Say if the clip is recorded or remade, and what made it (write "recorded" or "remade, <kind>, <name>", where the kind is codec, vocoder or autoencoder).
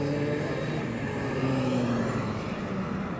recorded